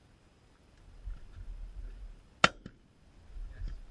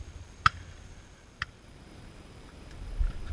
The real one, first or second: first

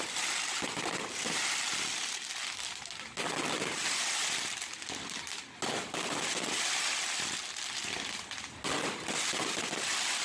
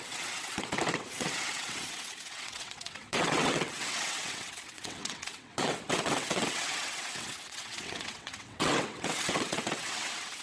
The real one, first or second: first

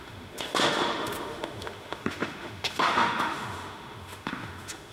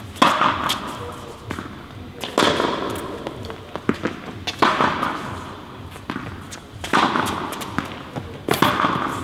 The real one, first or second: second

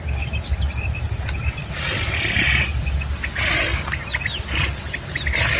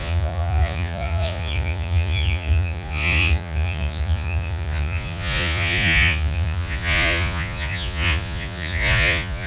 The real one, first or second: first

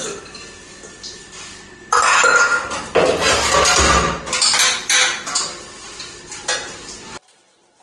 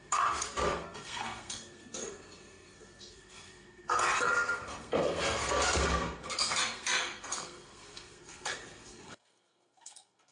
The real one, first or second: first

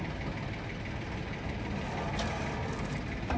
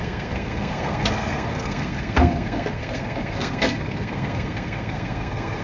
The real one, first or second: first